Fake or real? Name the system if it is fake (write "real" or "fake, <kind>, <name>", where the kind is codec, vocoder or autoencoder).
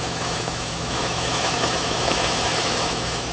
fake, autoencoder, DAC-VAE